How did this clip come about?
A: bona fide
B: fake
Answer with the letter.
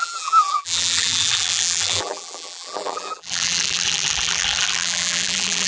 B